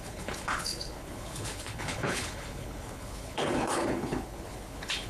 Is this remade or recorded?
remade